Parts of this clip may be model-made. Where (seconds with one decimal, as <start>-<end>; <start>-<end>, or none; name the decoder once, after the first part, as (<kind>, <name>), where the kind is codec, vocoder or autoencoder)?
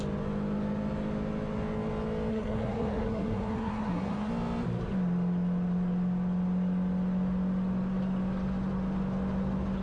2.3-4.3 (codec, SNAC)